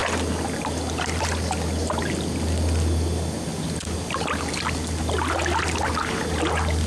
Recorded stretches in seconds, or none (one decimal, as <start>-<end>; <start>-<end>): 0.0-6.9